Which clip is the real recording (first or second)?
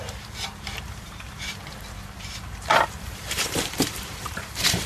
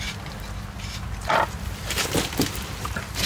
second